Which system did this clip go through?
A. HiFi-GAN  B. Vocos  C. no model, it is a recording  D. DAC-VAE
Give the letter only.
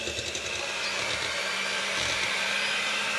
C